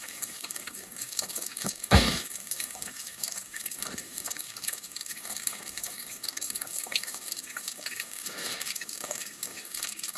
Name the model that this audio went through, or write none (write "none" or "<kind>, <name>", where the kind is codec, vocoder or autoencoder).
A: codec, DAC